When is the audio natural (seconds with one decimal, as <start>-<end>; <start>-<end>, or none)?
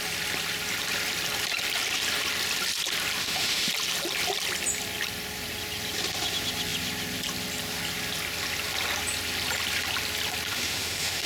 0.0-3.2; 3.7-10.5